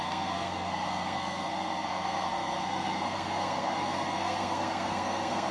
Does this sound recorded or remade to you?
remade